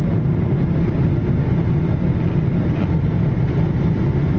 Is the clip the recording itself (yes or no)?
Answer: yes